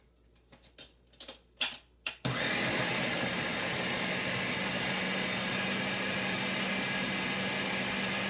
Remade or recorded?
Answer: recorded